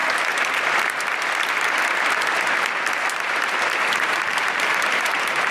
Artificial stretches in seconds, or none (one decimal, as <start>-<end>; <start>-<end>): 3.3-5.5